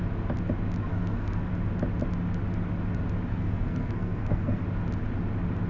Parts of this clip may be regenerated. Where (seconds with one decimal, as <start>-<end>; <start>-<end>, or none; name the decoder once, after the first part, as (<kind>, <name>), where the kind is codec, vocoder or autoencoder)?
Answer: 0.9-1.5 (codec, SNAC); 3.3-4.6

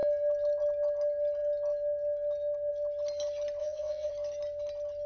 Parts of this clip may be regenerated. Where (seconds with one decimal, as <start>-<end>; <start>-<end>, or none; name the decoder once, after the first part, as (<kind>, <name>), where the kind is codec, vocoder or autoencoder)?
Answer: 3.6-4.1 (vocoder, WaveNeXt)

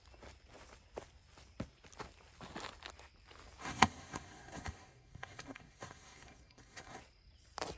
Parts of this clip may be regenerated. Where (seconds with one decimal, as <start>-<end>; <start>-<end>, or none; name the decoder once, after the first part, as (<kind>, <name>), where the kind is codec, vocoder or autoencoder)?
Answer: 3.6-7.0 (codec, SNAC)

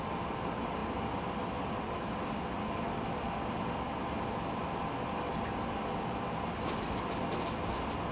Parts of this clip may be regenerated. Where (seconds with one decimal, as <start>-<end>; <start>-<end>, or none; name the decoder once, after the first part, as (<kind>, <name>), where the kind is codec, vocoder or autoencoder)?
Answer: none

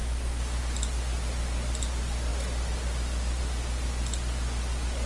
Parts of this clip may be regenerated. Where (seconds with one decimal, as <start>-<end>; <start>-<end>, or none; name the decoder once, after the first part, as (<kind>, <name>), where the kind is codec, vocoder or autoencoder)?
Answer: none

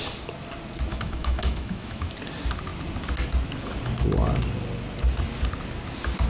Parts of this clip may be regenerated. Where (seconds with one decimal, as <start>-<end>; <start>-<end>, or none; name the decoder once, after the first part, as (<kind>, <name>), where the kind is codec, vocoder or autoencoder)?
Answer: 0.9-2.1 (autoencoder, DAC-VAE)